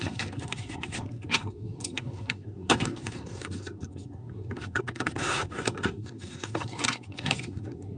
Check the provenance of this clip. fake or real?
fake